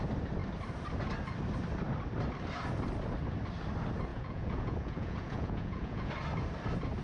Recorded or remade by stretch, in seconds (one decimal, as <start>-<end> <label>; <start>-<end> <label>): 0.0-4.1 recorded; 4.1-6.1 remade; 6.1-7.0 recorded